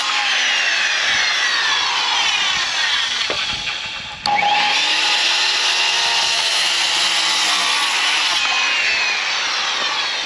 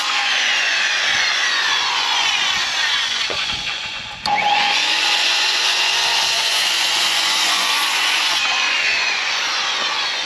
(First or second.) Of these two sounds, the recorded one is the first